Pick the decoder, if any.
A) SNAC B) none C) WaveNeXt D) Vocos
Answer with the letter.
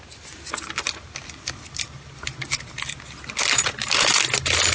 B